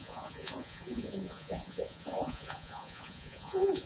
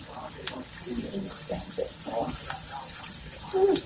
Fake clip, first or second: first